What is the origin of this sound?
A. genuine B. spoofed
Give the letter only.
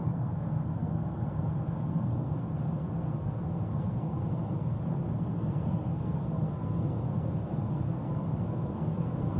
B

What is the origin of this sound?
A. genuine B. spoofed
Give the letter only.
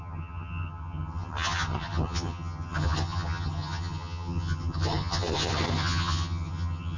B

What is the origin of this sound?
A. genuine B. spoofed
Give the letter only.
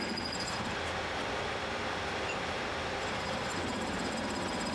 A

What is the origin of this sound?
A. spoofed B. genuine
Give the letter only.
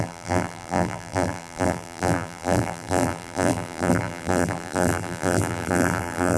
A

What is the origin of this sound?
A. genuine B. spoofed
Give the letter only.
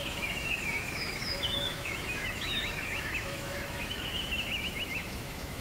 B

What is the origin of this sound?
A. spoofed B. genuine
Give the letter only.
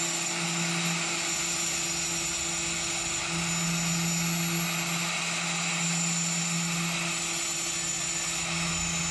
B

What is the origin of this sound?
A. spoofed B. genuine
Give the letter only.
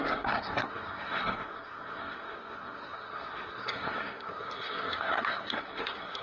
A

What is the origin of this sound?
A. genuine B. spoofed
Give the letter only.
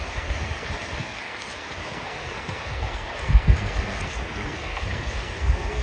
B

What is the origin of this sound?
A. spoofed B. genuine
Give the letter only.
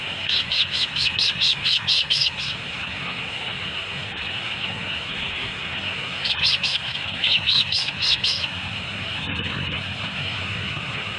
A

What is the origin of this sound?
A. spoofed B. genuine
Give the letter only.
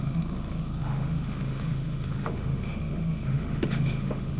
A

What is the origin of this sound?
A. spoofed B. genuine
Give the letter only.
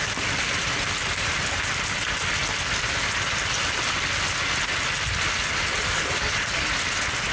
B